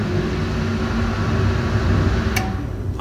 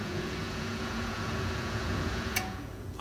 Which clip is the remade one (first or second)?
second